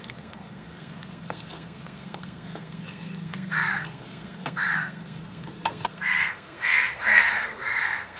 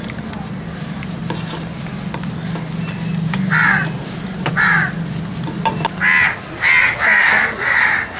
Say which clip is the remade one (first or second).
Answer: first